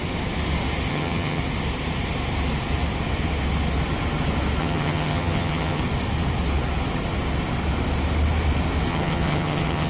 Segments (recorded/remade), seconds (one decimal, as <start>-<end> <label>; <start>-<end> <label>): 0.0-0.9 recorded; 0.9-1.4 remade; 1.4-4.6 recorded; 4.6-5.8 remade; 5.8-8.9 recorded; 8.9-9.9 remade